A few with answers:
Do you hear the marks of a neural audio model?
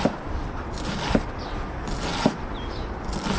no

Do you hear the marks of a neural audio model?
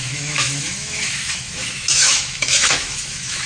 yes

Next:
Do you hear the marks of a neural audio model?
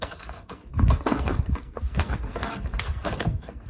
yes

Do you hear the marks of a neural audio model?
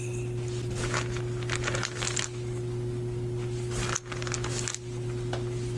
no